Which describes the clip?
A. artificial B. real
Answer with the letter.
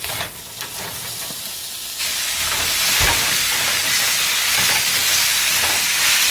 B